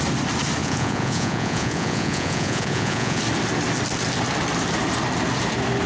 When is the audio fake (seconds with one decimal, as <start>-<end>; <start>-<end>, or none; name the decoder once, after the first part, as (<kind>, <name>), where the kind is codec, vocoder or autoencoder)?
0.6-3.2 (vocoder, Vocos)